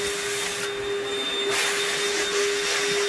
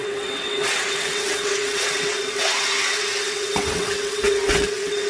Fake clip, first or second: second